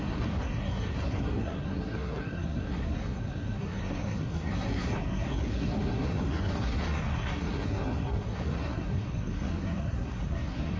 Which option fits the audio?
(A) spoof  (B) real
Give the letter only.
A